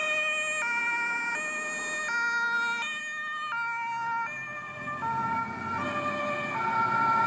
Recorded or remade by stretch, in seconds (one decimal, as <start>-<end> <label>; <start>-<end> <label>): 0.0-7.3 recorded